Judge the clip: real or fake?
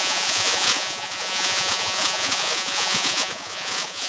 fake